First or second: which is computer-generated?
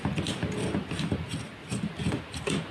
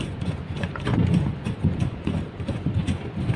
second